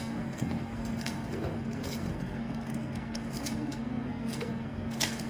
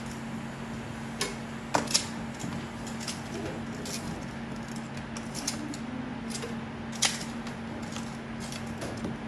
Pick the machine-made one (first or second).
first